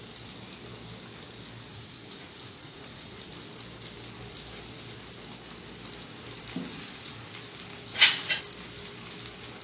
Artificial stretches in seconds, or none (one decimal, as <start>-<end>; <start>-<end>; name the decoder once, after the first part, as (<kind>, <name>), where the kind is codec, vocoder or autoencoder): 1.7-3.3 (vocoder, Vocos); 6.7-7.3; 7.9-8.4